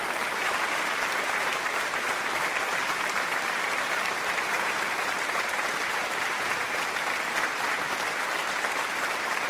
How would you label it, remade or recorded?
remade